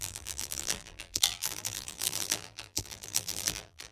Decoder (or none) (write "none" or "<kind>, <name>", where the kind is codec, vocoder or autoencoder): vocoder, BigVGAN v2